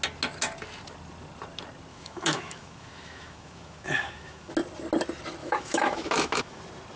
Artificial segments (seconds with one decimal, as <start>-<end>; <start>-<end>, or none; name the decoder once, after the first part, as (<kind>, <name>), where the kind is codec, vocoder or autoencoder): 1.9-4.5 (autoencoder, DAC-VAE); 5.4-6.6